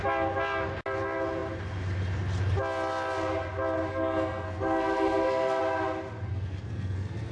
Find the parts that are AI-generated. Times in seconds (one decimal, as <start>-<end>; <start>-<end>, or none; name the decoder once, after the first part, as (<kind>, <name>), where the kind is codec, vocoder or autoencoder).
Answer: 3.9-5.6 (codec, SNAC); 6.3-7.3